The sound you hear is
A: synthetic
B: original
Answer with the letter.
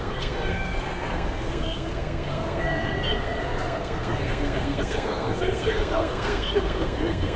A